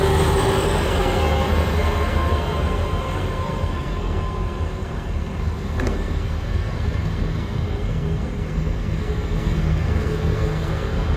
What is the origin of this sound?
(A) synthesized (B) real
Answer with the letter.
A